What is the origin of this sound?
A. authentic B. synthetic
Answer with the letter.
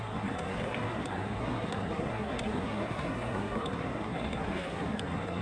B